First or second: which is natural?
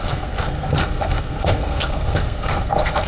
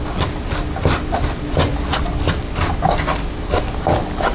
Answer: second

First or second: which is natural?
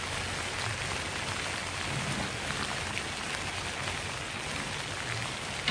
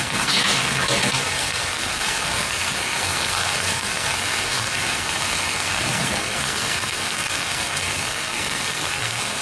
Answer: first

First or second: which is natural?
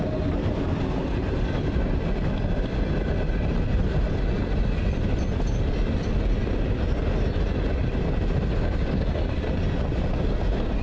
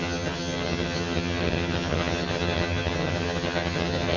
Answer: first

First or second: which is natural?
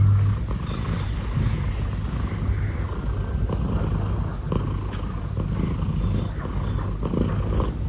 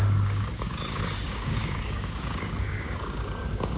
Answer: first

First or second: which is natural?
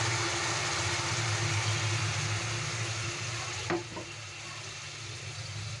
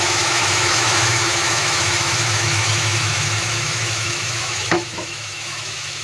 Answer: first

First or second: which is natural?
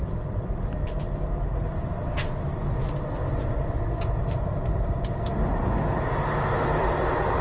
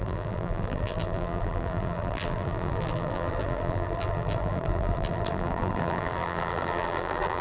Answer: first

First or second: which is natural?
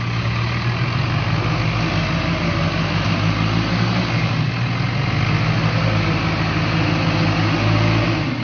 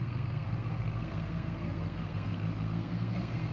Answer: first